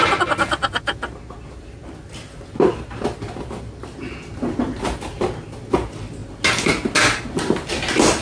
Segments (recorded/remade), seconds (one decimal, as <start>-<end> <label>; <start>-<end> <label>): 0.0-8.2 recorded